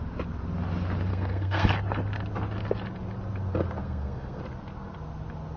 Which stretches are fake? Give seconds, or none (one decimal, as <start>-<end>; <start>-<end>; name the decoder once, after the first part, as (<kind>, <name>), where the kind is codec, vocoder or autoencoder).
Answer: 1.1-1.7 (codec, SNAC); 3.8-4.4